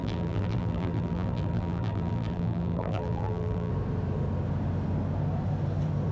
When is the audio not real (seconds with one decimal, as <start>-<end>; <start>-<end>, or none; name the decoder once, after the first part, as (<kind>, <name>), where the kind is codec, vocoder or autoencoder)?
0.0-3.7 (vocoder, BigVGAN v2)